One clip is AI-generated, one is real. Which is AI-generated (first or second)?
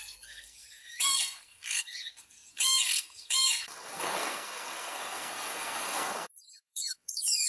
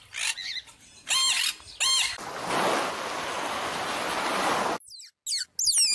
first